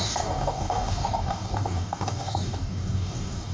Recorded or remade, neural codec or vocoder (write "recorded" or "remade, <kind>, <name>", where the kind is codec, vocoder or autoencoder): remade, codec, DAC